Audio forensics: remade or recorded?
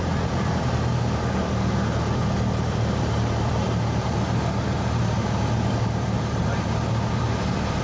recorded